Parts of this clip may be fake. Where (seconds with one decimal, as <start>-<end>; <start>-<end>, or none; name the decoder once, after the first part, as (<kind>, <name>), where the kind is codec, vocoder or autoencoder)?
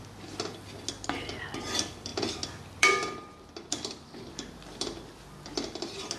2.1-5.5 (vocoder, BigVGAN v2)